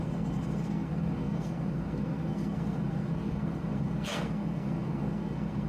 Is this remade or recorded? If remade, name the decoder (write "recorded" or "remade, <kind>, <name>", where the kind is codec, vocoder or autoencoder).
remade, codec, SNAC